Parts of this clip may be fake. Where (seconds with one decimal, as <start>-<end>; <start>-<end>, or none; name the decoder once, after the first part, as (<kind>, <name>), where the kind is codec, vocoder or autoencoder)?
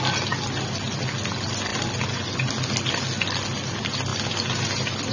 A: none